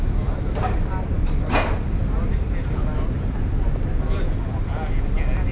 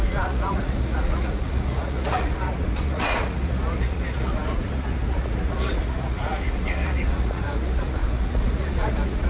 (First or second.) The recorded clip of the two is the first